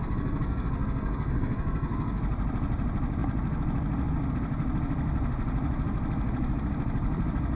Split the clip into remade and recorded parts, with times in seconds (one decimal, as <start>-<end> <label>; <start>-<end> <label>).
0.0-2.2 remade; 2.2-7.6 recorded